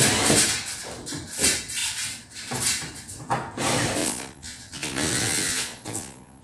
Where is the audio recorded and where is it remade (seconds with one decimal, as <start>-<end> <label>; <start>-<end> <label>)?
0.0-4.0 recorded; 4.0-6.4 remade